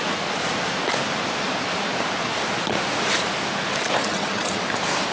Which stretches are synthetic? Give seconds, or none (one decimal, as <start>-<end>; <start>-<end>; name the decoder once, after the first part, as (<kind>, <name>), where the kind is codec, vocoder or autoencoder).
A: 4.0-4.6 (vocoder, HiFi-GAN)

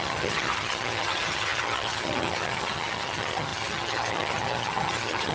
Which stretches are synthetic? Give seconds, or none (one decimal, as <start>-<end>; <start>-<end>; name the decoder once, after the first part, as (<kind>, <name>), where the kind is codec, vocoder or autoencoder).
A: 0.0-5.3 (vocoder, HiFi-GAN)

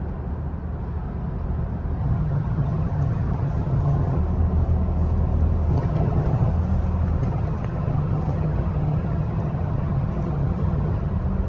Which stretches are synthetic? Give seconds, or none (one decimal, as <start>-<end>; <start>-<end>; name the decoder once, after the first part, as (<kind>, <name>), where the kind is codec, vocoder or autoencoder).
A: 2.0-4.2 (vocoder, HiFi-GAN); 5.7-6.5; 7.2-11.1

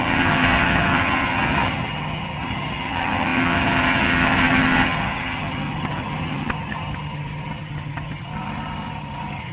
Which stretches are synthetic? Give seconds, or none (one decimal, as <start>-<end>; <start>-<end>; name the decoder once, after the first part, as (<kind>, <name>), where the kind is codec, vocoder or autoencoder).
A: 0.0-9.5 (vocoder, HiFi-GAN)

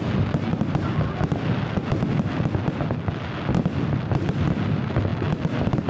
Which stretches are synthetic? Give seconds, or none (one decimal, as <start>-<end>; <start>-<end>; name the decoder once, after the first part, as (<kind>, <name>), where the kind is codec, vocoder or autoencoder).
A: none

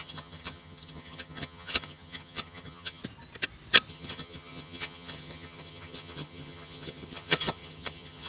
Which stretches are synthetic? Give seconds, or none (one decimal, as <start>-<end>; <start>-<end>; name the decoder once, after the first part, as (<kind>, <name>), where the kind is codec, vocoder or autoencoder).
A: 0.0-3.0 (vocoder, HiFi-GAN); 3.9-8.3